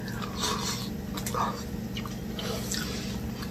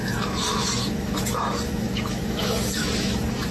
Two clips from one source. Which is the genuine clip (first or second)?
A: first